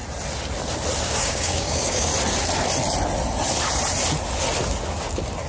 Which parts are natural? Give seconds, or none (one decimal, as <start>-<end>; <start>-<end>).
0.0-1.0; 2.1-5.5